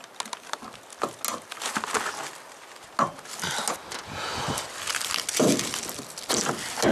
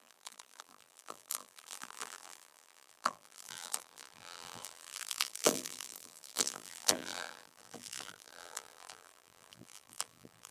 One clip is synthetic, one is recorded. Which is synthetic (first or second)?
second